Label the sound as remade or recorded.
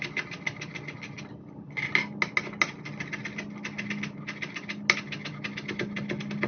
recorded